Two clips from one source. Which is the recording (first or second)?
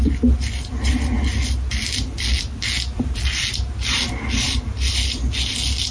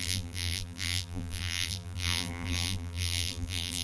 first